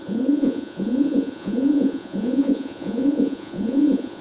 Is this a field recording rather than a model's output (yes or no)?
no